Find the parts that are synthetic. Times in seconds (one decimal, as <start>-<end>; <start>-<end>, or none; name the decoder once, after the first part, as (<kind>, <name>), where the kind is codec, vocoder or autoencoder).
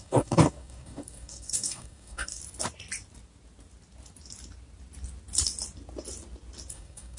0.0-2.4 (codec, DAC); 6.7-7.2